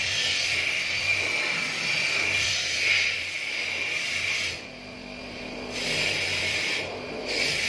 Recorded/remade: recorded